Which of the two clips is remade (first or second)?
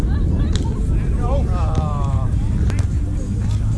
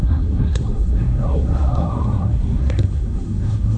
second